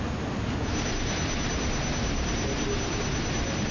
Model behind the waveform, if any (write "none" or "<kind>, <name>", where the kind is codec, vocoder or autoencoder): none